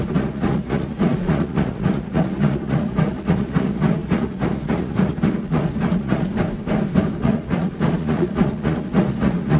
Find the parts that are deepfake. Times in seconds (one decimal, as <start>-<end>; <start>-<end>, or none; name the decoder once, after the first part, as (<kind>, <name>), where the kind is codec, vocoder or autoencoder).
0.0-6.3 (vocoder, Vocos); 7.2-9.6